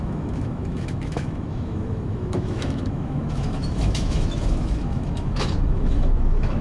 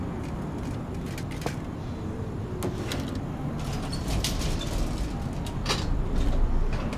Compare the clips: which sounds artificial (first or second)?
first